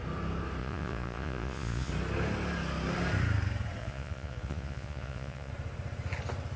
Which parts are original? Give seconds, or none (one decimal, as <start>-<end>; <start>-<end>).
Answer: 0.0-0.6; 1.9-3.8; 5.5-6.6